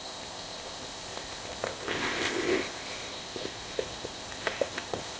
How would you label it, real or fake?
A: fake